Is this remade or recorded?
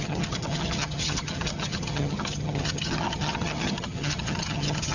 remade